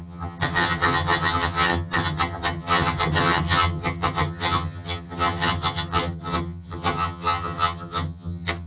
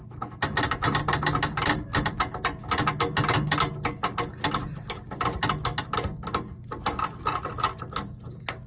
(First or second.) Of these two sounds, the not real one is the first